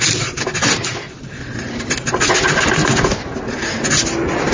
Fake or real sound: real